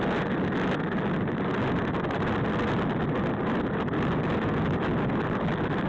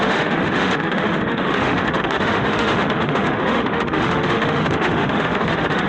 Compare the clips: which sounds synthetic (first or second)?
second